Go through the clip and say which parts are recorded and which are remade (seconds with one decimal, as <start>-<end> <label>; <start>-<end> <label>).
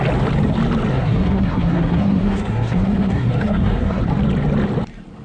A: 0.0-0.9 recorded; 0.9-4.0 remade; 4.0-5.2 recorded